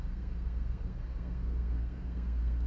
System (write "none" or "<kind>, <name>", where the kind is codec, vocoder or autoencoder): codec, SNAC